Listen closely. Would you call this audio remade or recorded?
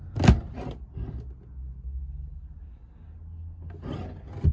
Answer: recorded